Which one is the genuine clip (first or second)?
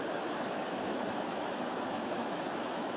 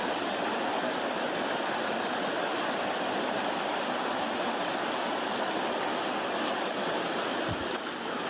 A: second